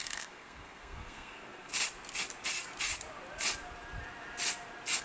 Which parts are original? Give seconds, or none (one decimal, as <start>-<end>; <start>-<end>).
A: 1.7-5.0